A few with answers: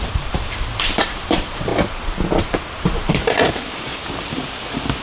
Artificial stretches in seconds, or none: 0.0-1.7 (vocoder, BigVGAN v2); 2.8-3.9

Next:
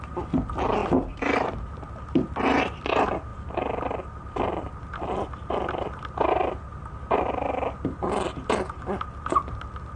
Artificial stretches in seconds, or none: none

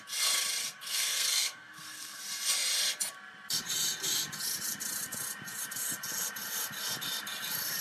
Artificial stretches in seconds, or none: 0.6-2.2 (codec, SNAC)